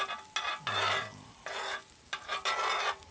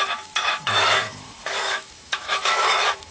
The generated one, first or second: second